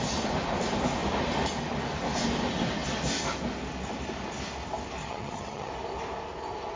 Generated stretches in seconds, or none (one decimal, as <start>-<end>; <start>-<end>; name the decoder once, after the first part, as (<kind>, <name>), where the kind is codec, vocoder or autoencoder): 5.0-5.7 (vocoder, HiFi-GAN)